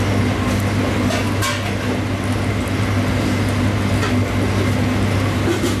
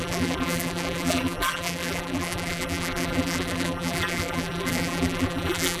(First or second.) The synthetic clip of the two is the second